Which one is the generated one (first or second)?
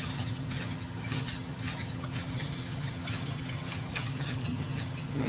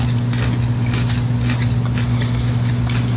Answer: first